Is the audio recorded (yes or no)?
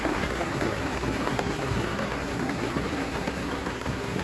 no